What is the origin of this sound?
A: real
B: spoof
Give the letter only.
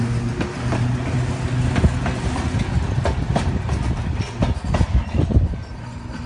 A